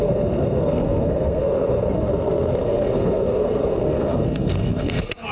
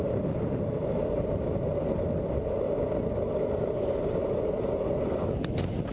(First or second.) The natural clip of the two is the second